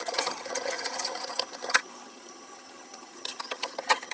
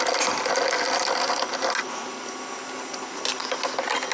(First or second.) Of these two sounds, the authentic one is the second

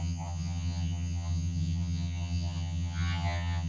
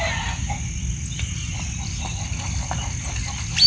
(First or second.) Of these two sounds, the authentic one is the second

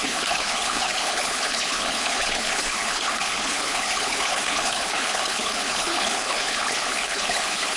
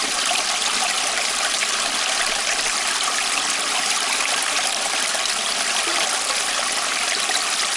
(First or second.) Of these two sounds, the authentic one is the second